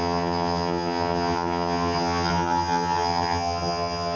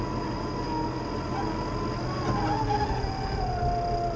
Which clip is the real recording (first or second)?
second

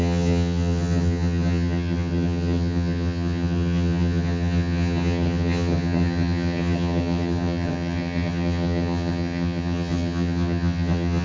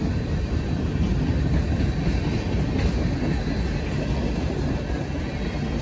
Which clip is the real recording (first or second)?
second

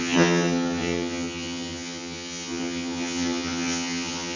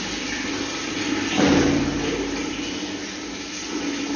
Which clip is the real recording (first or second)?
second